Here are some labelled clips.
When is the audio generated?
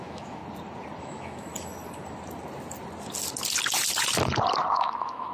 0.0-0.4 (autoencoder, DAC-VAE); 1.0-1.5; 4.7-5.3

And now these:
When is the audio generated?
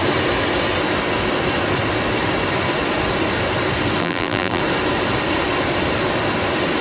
4.0-4.6 (vocoder, BigVGAN v2)